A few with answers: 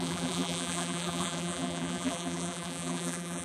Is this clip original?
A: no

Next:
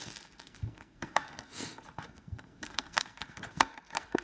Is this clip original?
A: no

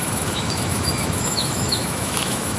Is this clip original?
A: no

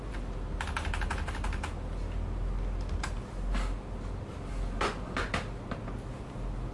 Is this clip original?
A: yes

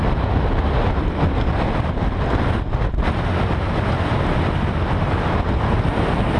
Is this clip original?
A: yes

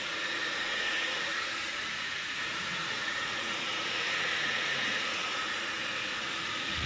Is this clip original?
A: no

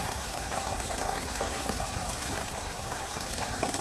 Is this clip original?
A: no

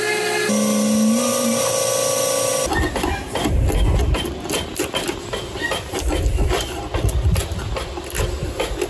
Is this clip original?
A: yes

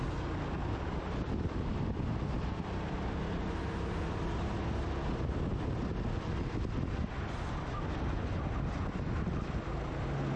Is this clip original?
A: yes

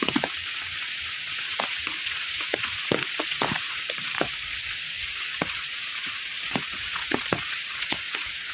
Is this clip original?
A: no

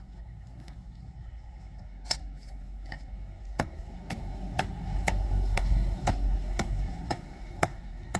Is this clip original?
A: no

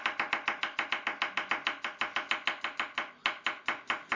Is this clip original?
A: yes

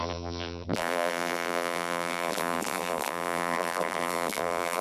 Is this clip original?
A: no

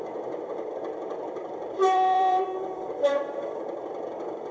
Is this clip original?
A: no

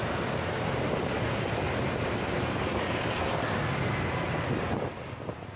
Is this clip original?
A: yes